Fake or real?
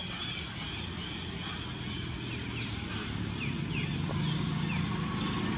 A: real